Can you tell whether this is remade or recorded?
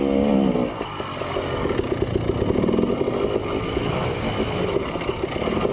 recorded